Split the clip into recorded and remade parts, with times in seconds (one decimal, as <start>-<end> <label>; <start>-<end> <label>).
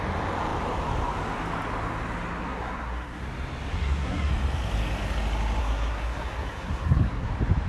0.0-2.4 recorded; 2.4-3.2 remade; 3.2-3.7 recorded; 3.7-4.3 remade; 4.3-5.6 recorded; 5.6-7.3 remade; 7.3-7.7 recorded